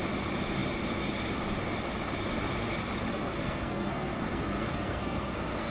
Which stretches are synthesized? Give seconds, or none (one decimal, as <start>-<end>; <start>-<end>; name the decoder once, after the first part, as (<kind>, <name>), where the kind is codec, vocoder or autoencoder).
3.1-5.7 (codec, SNAC)